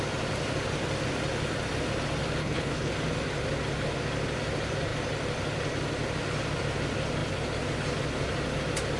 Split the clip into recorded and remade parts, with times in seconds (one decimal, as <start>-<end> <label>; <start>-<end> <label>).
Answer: 0.0-2.4 recorded; 2.4-2.9 remade; 2.9-9.0 recorded